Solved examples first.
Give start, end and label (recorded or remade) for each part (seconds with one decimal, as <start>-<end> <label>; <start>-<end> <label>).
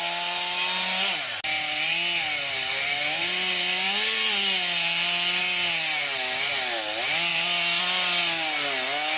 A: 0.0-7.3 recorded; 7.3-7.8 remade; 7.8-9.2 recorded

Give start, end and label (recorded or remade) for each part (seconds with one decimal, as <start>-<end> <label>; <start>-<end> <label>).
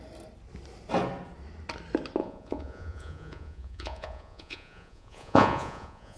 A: 0.0-2.2 recorded; 2.2-6.2 remade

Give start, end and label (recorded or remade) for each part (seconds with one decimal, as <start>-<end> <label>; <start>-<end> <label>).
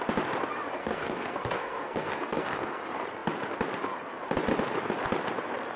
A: 0.0-0.8 recorded; 0.8-2.8 remade; 2.8-5.8 recorded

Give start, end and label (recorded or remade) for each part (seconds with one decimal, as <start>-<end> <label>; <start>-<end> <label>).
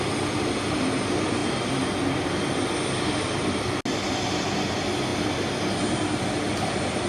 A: 0.0-7.1 recorded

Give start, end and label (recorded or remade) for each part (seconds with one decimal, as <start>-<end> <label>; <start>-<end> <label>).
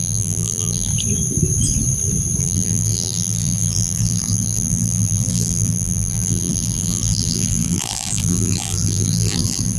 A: 0.0-0.9 remade; 0.9-2.4 recorded; 2.4-9.8 remade